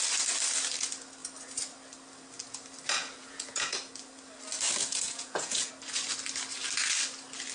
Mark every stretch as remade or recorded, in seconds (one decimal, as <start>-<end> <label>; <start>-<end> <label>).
0.0-3.0 recorded; 3.0-3.9 remade; 3.9-4.8 recorded; 4.8-5.7 remade; 5.7-7.5 recorded